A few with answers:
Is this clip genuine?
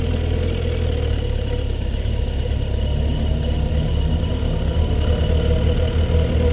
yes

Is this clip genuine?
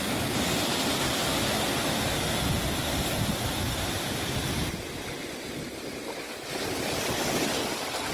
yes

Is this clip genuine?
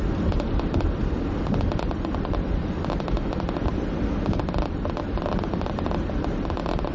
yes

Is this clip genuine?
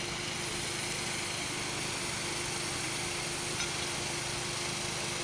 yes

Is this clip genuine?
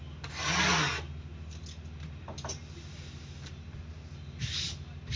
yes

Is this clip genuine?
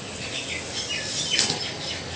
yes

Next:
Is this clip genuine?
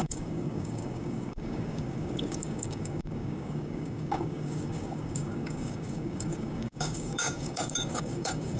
no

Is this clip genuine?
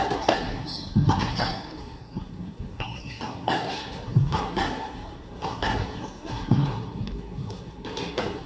no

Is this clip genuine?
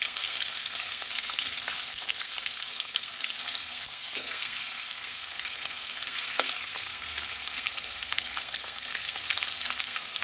no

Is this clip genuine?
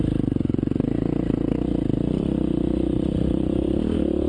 yes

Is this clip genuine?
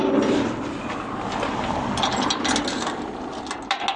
yes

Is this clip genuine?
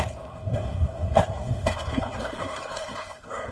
no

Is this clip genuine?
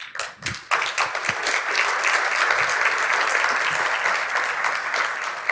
yes